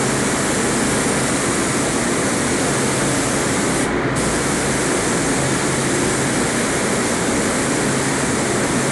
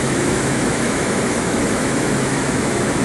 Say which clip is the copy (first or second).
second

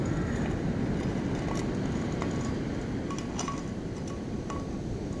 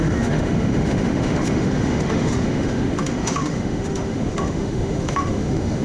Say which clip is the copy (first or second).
second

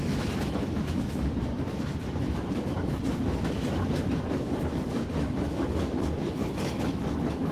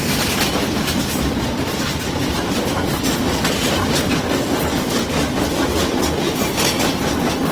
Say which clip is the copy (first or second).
first